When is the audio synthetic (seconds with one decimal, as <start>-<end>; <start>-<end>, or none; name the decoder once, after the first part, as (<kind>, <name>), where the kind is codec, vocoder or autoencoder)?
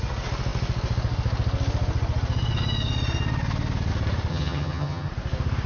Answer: 4.3-5.1 (vocoder, HiFi-GAN)